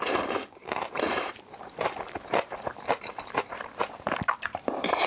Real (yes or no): no